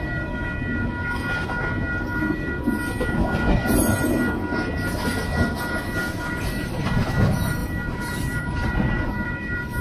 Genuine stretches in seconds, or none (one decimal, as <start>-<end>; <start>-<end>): 0.0-6.0; 6.8-7.6